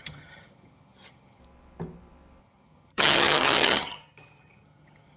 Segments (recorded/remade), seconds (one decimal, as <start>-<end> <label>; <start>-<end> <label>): 0.0-1.4 remade; 1.4-2.4 recorded; 2.4-5.2 remade